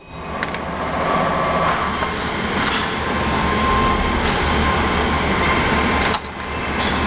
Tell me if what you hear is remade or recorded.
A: recorded